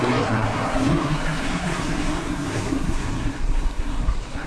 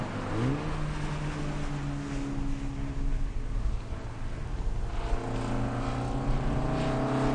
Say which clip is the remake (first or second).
first